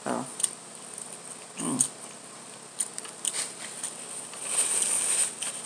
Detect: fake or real real